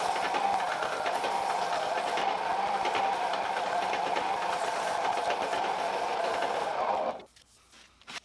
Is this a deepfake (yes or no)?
no